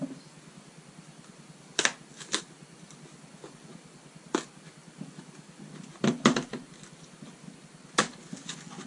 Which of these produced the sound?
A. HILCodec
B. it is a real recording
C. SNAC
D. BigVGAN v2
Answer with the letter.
B